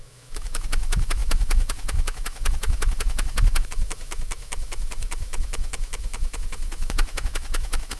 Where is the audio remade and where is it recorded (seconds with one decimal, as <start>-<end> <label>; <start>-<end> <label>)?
0.0-8.0 remade